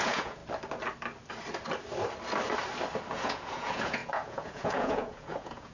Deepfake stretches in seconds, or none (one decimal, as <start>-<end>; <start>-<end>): 0.0-0.4; 3.1-5.7